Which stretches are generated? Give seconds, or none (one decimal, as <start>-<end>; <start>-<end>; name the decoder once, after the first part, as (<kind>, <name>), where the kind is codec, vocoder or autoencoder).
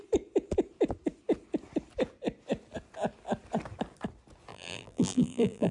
4.5-5.7 (vocoder, BigVGAN v2)